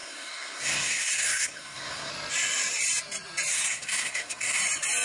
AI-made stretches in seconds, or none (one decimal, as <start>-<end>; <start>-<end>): 0.0-2.1; 3.5-4.6